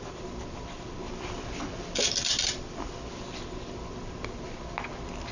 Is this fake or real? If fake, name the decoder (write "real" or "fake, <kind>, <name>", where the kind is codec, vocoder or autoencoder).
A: real